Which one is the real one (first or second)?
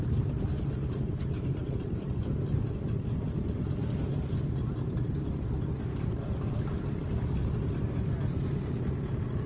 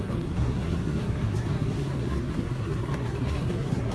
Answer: first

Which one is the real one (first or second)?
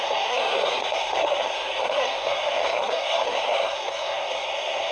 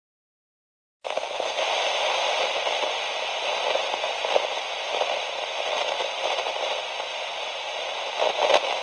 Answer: second